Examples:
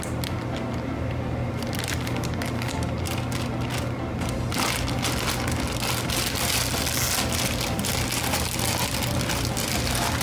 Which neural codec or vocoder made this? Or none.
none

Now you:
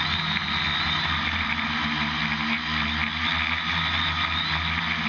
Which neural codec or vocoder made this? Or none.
none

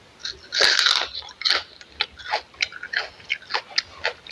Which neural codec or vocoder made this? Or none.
none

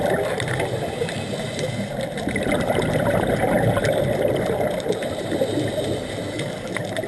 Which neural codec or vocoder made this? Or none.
none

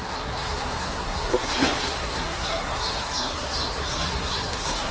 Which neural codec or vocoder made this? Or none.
codec, SNAC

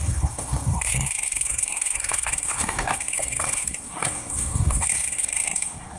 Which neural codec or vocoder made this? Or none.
codec, SNAC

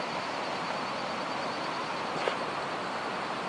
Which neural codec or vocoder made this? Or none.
none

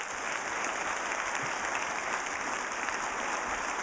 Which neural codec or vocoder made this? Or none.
none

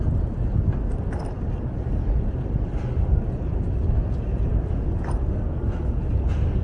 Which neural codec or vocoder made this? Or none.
none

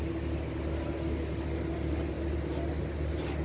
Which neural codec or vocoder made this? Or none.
none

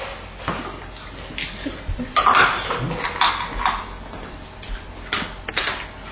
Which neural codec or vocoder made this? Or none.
none